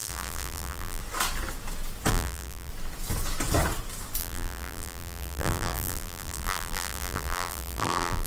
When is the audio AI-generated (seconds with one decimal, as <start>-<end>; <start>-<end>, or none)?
0.0-1.0; 2.1-2.7; 4.2-8.3